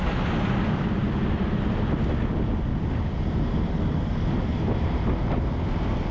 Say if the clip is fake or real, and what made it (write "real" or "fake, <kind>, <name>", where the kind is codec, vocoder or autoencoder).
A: real